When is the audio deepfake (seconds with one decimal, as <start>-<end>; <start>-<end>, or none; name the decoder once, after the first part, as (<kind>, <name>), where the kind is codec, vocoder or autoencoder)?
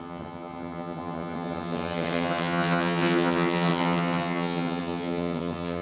0.0-5.8 (vocoder, HiFi-GAN)